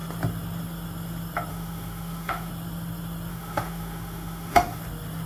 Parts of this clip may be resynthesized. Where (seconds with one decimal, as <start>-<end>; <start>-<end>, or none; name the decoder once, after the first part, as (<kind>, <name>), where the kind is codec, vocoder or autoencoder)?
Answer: 1.5-2.5 (autoencoder, DAC-VAE); 3.3-4.8